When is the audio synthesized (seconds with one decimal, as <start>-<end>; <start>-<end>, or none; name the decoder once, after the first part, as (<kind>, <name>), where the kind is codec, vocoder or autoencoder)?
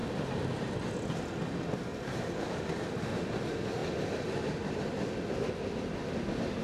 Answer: 0.0-0.9 (vocoder, BigVGAN v2); 1.9-2.6